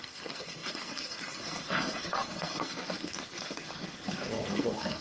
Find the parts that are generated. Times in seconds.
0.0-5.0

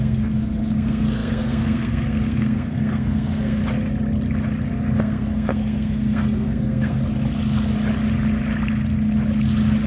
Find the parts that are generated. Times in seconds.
0.0-3.6; 5.0-7.0

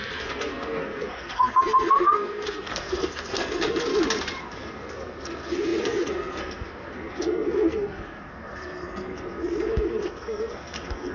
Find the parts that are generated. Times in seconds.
0.0-3.9; 4.4-11.1

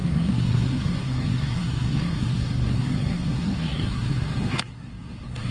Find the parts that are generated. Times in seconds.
0.0-5.5